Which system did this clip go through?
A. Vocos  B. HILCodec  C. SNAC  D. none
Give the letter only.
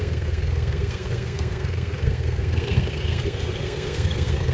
C